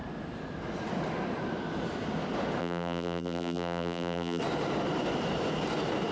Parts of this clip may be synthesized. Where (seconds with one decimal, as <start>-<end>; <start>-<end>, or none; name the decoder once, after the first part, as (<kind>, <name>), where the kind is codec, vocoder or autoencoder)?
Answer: 2.6-4.4 (vocoder, BigVGAN v2)